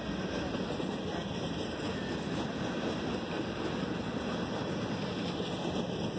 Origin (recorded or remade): recorded